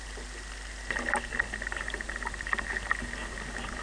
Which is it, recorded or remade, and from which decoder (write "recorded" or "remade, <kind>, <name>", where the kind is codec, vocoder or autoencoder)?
recorded